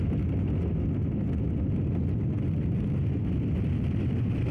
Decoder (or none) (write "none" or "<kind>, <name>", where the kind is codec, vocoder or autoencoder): none